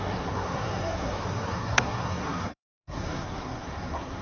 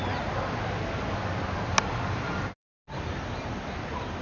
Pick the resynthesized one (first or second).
first